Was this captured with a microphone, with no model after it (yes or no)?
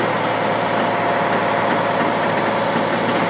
yes